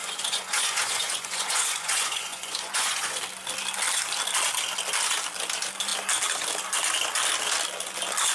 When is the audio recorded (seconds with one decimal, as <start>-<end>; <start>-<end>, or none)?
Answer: 3.2-8.3